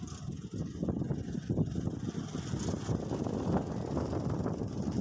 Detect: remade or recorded recorded